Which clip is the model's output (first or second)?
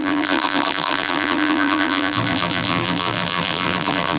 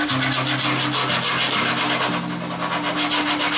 first